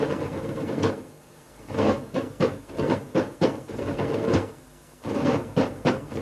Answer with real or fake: fake